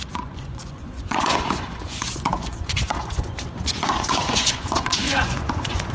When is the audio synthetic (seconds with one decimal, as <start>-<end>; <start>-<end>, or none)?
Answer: 0.0-5.9